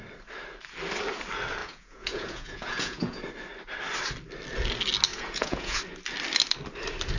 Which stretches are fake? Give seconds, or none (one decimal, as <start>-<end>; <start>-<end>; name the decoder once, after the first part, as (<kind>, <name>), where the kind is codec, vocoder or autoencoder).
1.6-3.2 (vocoder, Vocos); 5.1-5.8

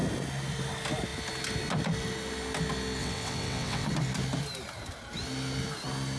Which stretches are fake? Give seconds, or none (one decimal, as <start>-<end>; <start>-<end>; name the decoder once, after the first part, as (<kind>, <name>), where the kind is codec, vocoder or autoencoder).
3.0-3.9 (vocoder, WaveNeXt)

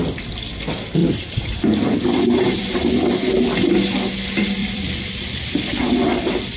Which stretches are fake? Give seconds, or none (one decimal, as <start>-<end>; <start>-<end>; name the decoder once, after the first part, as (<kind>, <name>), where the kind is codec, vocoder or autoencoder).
1.0-3.3 (vocoder, BigVGAN v2); 4.6-5.5

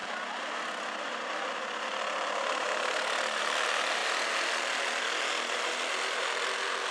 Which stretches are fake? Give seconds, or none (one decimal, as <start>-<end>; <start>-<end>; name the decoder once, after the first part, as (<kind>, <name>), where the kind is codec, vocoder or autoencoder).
2.0-4.0 (vocoder, BigVGAN v2); 5.0-6.9

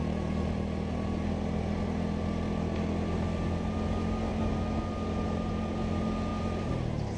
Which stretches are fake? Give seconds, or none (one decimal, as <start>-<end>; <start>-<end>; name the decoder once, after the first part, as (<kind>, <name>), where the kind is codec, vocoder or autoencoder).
none

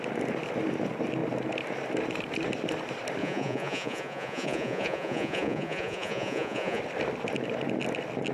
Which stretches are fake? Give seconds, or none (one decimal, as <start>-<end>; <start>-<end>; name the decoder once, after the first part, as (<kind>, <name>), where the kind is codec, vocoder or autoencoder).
3.2-6.8 (vocoder, Vocos)

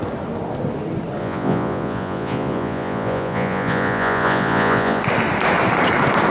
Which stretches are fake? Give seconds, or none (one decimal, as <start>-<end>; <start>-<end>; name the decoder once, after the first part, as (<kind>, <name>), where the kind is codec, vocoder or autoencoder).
1.2-5.0 (vocoder, Vocos)

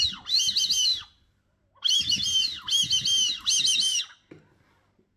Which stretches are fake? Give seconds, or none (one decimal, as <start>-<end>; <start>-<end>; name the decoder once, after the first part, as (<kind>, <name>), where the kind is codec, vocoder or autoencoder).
none